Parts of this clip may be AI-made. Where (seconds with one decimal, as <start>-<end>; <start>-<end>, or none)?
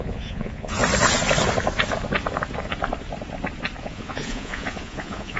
0.0-0.8; 3.8-5.4